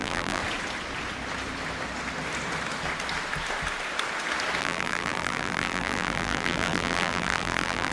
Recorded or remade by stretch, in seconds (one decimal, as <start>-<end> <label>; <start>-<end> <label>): 0.0-0.4 remade; 0.4-4.6 recorded; 4.6-7.9 remade